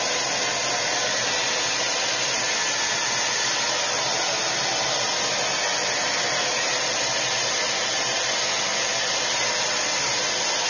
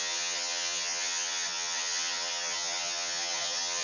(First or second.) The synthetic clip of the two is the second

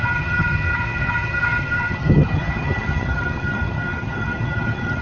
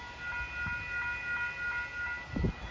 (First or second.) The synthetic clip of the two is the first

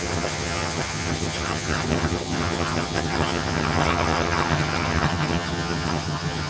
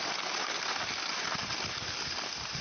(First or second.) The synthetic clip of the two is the first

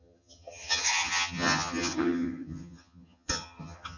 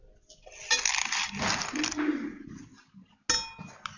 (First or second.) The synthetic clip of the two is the first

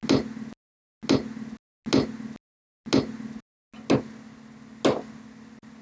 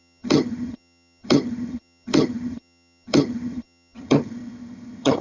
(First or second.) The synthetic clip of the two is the second